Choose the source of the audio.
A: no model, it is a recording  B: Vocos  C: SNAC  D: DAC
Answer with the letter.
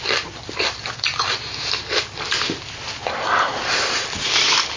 A